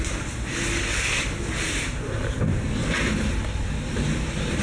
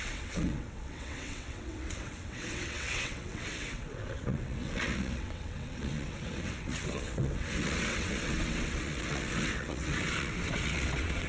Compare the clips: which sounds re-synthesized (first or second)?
second